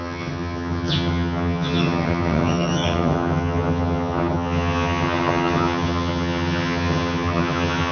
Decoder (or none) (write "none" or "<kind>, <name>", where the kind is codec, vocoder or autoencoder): vocoder, HiFi-GAN